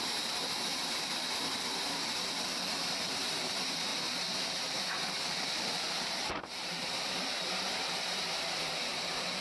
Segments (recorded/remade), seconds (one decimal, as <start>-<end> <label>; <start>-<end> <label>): 0.0-0.7 remade; 0.7-2.9 recorded; 2.9-3.9 remade; 3.9-4.6 recorded; 4.6-9.4 remade